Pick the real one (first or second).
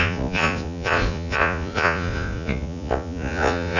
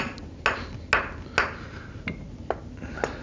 second